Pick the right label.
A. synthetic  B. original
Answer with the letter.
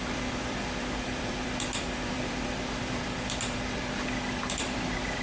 A